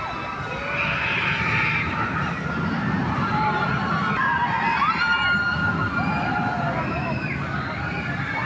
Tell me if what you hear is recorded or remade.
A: recorded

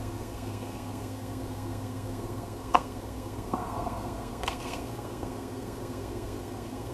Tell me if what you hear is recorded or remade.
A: remade